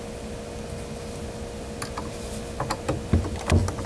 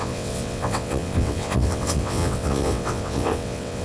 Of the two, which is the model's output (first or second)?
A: second